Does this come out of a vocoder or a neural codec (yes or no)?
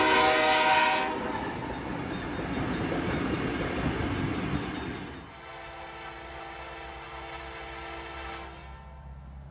no